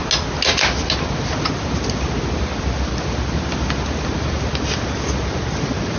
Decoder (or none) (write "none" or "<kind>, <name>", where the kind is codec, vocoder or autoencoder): none